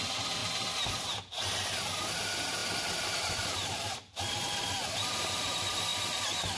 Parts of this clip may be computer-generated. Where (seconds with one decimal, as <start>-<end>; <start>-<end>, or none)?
0.0-0.4; 2.2-2.6; 3.3-5.9

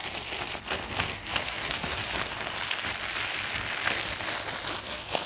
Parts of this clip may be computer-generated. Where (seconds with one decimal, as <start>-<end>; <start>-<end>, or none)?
0.6-2.0; 4.8-5.3

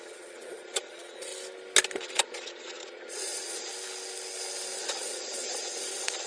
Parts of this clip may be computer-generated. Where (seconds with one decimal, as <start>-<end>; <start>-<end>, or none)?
0.0-1.3; 2.0-3.7; 4.8-6.3